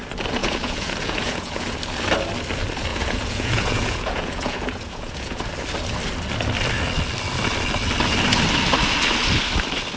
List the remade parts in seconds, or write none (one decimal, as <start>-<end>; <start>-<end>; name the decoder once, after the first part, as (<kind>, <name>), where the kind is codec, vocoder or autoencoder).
0.4-1.8 (vocoder, Vocos); 2.9-5.4